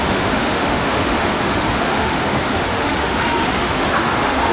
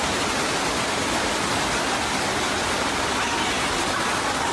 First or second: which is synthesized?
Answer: first